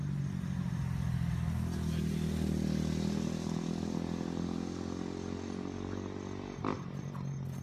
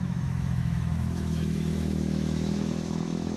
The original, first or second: first